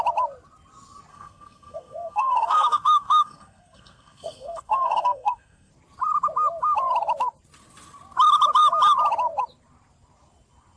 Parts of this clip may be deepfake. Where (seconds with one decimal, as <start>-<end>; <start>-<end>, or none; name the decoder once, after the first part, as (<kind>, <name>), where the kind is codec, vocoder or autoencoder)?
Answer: 1.1-5.7 (codec, SNAC)